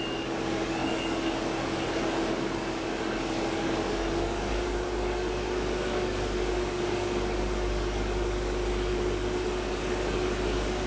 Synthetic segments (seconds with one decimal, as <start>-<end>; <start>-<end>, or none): 0.0-10.9